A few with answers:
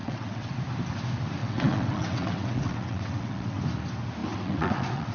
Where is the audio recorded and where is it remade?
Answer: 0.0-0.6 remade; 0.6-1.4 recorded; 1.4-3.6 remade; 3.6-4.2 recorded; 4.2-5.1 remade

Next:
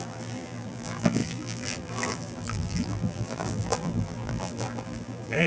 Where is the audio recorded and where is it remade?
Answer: 0.0-5.5 remade

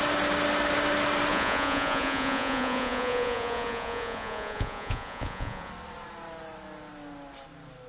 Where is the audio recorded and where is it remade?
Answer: 0.0-1.3 recorded; 1.3-5.7 remade; 5.7-7.9 recorded

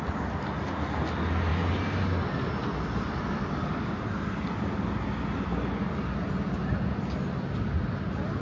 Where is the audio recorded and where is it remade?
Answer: 0.0-8.4 recorded